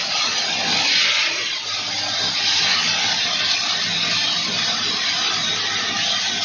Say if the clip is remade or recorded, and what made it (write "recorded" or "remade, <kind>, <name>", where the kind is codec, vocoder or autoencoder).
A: recorded